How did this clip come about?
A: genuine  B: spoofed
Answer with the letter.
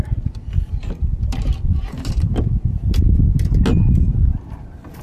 A